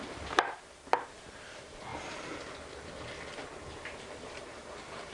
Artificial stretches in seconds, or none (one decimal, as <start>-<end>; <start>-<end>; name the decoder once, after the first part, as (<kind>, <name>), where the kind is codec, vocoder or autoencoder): 0.0-1.9 (vocoder, BigVGAN v2); 3.7-5.1